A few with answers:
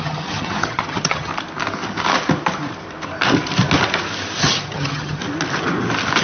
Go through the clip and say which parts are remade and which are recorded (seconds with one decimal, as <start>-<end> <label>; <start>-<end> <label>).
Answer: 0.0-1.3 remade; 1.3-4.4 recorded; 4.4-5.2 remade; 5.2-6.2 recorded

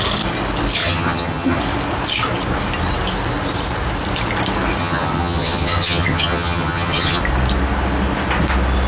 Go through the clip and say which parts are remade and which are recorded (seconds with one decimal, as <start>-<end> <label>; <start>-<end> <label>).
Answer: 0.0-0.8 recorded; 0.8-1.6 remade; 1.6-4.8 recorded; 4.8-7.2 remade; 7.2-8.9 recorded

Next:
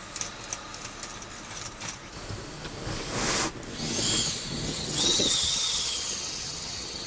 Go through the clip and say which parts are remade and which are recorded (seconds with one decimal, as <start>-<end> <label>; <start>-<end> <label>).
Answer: 0.0-4.7 recorded; 4.7-7.1 remade

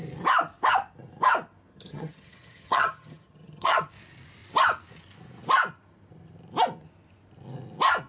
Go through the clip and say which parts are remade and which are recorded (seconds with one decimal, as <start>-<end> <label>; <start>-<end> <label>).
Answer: 0.0-1.7 recorded; 1.7-3.9 remade; 3.9-8.1 recorded

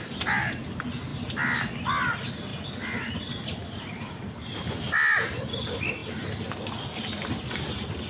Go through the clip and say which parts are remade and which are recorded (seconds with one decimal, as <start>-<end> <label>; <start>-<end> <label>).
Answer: 0.0-8.1 recorded

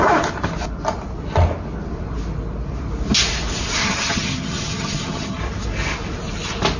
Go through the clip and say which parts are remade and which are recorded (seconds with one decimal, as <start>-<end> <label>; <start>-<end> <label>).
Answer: 0.0-3.8 recorded; 3.8-5.4 remade; 5.4-6.8 recorded

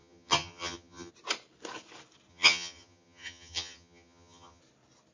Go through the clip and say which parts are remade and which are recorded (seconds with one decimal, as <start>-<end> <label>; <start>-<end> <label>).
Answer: 0.0-1.1 remade; 1.1-2.3 recorded; 2.3-4.6 remade; 4.6-5.1 recorded